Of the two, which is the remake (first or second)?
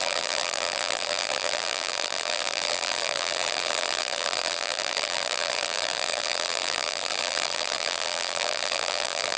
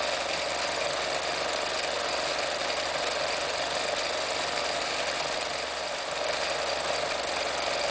first